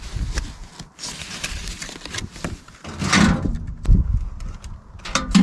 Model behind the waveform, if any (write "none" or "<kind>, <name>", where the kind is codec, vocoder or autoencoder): none